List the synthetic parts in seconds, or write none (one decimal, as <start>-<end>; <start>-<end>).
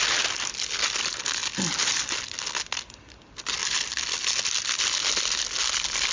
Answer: none